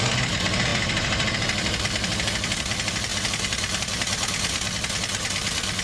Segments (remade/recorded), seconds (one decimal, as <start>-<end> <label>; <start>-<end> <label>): 0.0-5.8 recorded